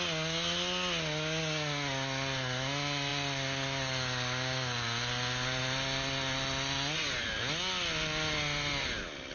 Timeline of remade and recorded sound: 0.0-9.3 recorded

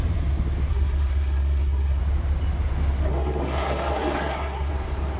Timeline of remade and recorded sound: 0.0-0.7 recorded; 0.7-2.0 remade; 2.0-3.1 recorded; 3.1-4.7 remade; 4.7-5.2 recorded